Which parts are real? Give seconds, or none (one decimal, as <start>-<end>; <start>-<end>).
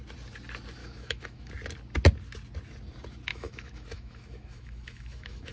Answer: 0.0-0.8; 1.5-3.3